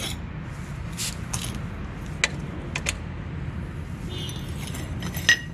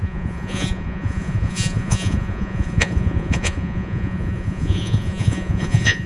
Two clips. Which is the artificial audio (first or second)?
second